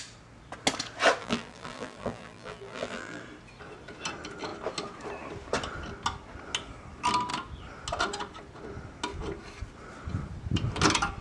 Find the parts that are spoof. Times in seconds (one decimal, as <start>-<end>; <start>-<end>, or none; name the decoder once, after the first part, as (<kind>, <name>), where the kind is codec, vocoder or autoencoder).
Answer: 1.2-3.2 (vocoder, BigVGAN v2)